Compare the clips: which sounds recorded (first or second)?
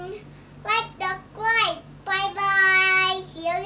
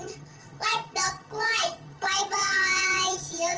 first